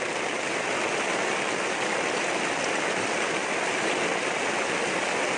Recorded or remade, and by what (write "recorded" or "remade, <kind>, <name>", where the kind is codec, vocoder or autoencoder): recorded